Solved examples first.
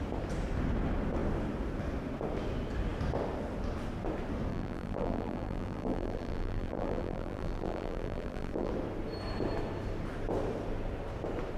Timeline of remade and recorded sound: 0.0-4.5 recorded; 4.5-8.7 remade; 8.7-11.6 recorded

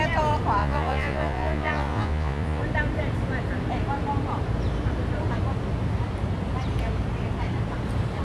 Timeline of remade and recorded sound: 0.0-0.6 recorded; 0.6-2.6 remade; 2.6-8.2 recorded

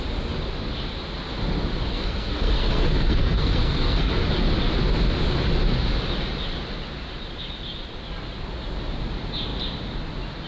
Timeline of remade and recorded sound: 0.0-1.9 recorded; 1.9-4.1 remade; 4.1-10.5 recorded

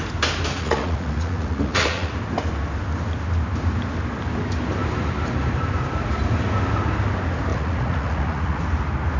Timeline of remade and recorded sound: 0.0-0.5 recorded; 0.5-2.1 remade; 2.1-7.5 recorded; 7.5-8.6 remade; 8.6-9.2 recorded

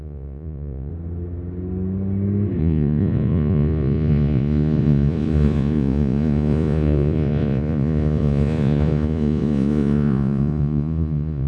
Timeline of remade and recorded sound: 0.0-0.9 remade; 0.9-2.6 recorded; 2.6-11.5 remade

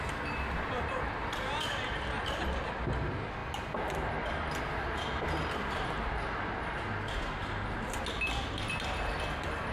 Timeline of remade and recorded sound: 0.0-9.7 recorded

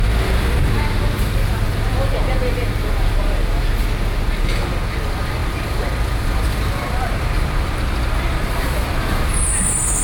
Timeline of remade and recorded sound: 0.0-5.4 recorded; 5.4-9.3 remade; 9.3-10.0 recorded